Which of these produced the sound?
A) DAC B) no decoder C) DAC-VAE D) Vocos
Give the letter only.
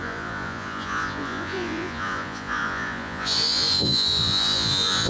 D